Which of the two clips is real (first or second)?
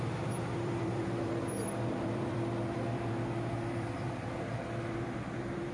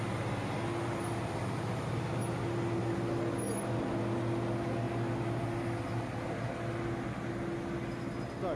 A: second